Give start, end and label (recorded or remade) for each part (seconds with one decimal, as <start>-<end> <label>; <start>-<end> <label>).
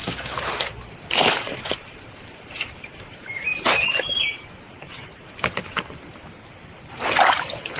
0.0-1.2 recorded; 1.2-5.8 remade; 5.8-7.8 recorded